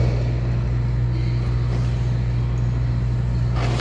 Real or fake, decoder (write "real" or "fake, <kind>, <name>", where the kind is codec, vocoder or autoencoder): real